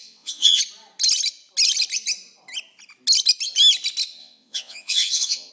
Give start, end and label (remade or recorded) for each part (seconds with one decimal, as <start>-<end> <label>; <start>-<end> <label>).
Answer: 0.0-0.6 remade; 0.6-4.2 recorded; 4.2-5.5 remade